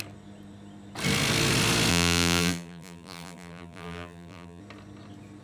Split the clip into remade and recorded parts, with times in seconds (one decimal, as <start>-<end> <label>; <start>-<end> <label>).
0.0-1.9 recorded; 1.9-4.6 remade; 4.6-5.4 recorded